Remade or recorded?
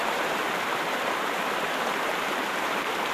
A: remade